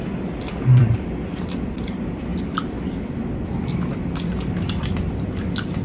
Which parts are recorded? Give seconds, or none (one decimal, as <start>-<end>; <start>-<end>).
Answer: 0.0-0.8; 1.4-5.8